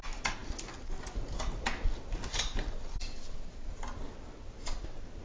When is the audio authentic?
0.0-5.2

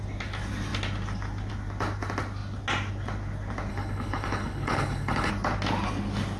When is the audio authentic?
0.0-3.7; 5.3-6.4

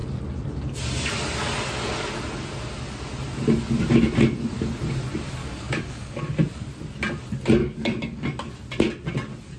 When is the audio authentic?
0.0-5.4; 6.2-7.6; 8.5-9.6

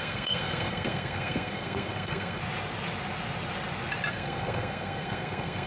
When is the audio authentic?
2.4-4.1

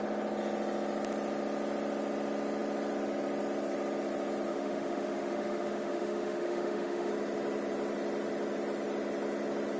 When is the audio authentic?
0.0-4.5; 7.1-9.8

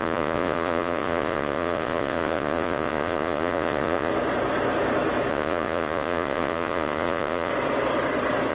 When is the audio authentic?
4.1-5.3; 7.5-8.5

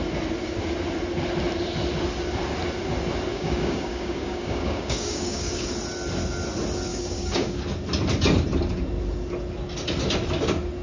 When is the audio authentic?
0.0-3.3; 5.7-6.9; 7.6-10.8

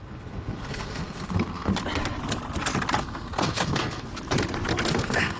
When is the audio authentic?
1.7-3.0; 4.1-4.9